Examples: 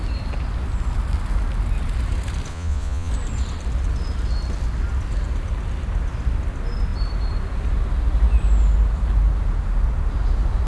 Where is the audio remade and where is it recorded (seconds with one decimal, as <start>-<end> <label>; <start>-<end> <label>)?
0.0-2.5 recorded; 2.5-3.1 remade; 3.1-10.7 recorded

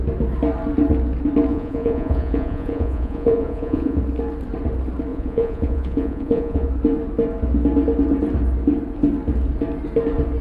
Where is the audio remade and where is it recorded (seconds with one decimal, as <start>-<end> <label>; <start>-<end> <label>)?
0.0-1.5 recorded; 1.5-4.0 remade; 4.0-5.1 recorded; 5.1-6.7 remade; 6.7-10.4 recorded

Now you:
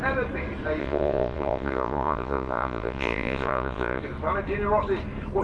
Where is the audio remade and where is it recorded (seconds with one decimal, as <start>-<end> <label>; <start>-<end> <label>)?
0.0-0.8 recorded; 0.8-4.0 remade; 4.0-5.4 recorded

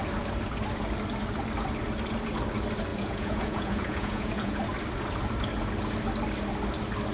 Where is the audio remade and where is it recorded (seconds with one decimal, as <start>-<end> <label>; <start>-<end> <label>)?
0.0-2.9 recorded; 2.9-4.6 remade; 4.6-7.1 recorded

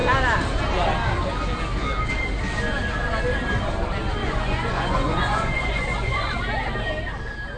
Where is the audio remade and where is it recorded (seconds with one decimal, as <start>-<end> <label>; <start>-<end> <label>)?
0.0-4.2 recorded; 4.2-6.4 remade; 6.4-7.6 recorded

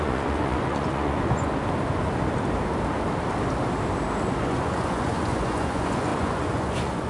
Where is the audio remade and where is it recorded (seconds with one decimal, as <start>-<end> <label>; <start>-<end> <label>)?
0.0-1.5 remade; 1.5-4.4 recorded; 4.4-7.1 remade

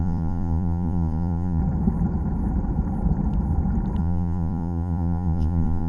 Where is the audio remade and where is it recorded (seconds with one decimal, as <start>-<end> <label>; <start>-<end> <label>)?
0.0-1.6 remade; 1.6-4.0 recorded; 4.0-5.9 remade

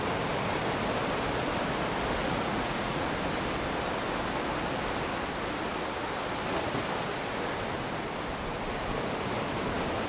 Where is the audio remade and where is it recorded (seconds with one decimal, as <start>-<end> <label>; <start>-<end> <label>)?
0.0-2.2 recorded; 2.2-3.1 remade; 3.1-10.1 recorded